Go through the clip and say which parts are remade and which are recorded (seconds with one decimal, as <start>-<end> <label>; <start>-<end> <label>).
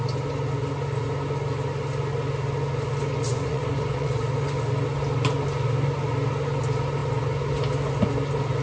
0.0-3.3 recorded; 3.3-4.2 remade; 4.2-8.6 recorded